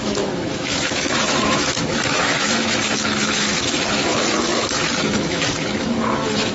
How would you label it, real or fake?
fake